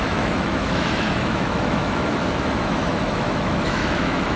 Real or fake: fake